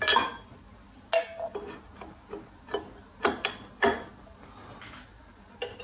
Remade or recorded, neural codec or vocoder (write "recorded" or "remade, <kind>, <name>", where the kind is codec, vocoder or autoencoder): recorded